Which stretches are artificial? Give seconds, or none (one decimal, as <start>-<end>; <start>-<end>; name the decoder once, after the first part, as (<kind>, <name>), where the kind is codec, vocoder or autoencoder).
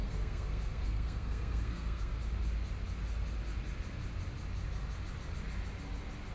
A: 0.0-2.1 (codec, SNAC)